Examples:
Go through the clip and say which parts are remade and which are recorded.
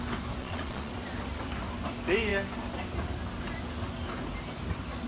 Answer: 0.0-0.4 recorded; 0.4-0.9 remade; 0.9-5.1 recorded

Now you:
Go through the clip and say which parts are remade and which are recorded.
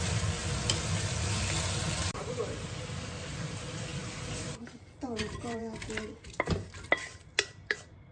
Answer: 0.0-0.4 remade; 0.4-2.1 recorded; 2.1-8.1 remade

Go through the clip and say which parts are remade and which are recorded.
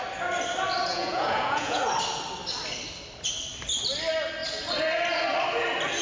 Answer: 0.0-0.9 recorded; 0.9-1.8 remade; 1.8-6.0 recorded